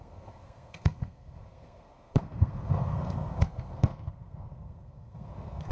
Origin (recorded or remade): remade